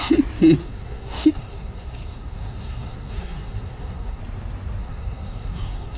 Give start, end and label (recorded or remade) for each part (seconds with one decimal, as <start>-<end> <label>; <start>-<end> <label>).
0.0-0.6 recorded; 0.6-4.2 remade; 4.2-4.8 recorded; 4.8-6.0 remade